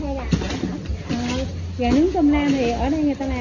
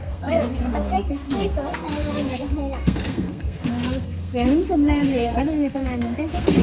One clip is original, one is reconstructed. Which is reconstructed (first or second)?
second